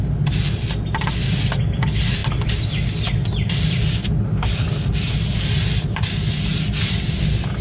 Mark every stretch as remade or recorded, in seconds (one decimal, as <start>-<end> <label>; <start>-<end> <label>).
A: 0.0-7.6 recorded